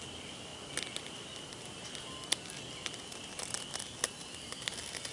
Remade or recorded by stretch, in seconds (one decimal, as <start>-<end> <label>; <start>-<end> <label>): 0.0-5.1 recorded